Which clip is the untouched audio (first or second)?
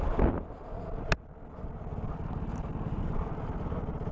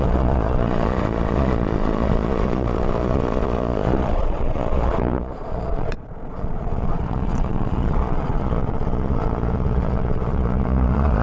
first